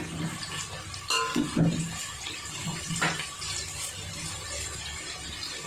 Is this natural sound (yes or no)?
yes